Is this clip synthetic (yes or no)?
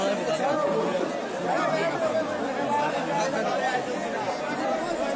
no